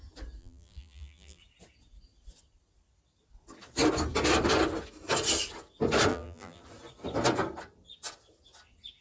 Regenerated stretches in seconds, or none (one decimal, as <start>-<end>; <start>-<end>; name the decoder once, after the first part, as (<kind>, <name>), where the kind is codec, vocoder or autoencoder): 0.4-1.4 (vocoder, BigVGAN v2); 6.1-6.6